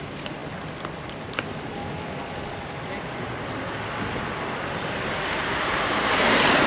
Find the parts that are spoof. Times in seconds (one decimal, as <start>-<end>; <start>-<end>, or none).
none